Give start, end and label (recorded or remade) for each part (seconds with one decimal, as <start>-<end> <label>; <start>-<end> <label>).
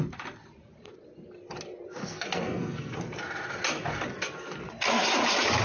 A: 0.0-2.0 recorded; 2.0-2.9 remade; 2.9-5.6 recorded